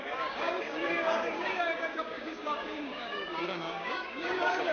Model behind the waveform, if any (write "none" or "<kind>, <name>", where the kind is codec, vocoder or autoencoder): codec, DAC